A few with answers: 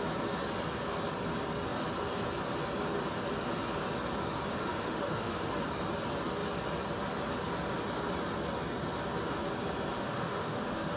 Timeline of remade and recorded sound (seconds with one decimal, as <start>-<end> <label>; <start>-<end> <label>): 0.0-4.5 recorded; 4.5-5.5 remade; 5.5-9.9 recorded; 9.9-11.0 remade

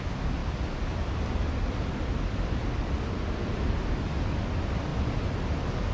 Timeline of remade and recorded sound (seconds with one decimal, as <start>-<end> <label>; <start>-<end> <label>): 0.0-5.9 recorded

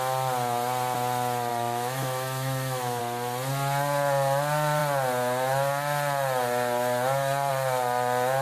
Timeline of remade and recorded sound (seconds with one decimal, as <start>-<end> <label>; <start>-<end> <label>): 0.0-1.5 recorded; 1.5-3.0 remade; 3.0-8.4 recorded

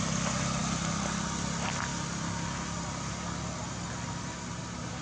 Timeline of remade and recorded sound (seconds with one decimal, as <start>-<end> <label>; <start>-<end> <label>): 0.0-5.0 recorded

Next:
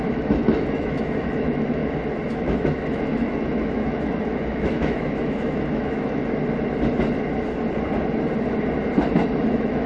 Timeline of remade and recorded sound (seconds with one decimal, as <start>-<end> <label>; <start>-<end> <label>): 0.0-1.8 remade; 1.8-2.3 recorded; 2.3-6.2 remade; 6.2-9.5 recorded; 9.5-9.9 remade

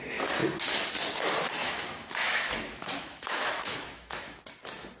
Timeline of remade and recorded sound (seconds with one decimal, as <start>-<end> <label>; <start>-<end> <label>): 0.0-1.6 recorded; 1.6-4.4 remade; 4.4-5.0 recorded